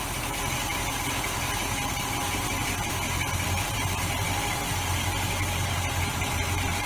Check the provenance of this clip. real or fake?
real